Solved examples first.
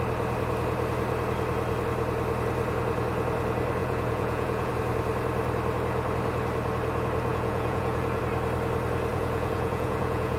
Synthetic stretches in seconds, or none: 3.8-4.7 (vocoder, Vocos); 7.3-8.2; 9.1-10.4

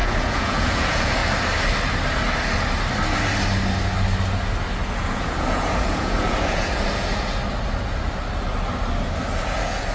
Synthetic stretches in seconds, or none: 0.0-1.2 (vocoder, Vocos); 5.0-7.4; 9.4-9.9